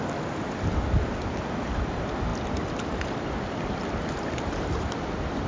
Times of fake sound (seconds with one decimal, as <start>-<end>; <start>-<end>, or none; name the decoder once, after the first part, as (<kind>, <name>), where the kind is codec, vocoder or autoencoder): none